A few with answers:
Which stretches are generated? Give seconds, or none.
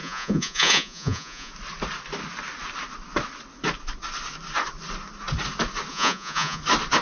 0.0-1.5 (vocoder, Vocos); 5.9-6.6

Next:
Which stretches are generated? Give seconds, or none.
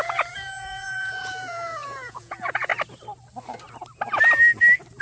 0.0-2.7 (vocoder, Vocos)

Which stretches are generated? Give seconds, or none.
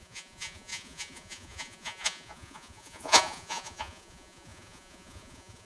0.0-5.7 (vocoder, Vocos)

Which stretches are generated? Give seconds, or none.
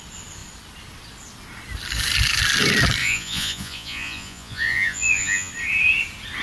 3.0-5.5 (vocoder, Vocos)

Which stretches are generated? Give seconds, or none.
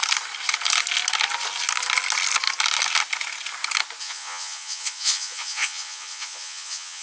4.0-7.0 (vocoder, Vocos)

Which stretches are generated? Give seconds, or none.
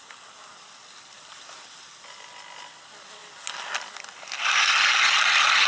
none